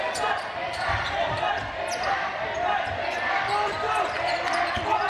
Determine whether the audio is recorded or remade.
remade